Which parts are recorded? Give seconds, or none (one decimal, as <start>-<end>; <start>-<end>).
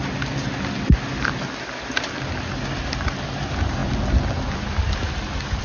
0.0-5.6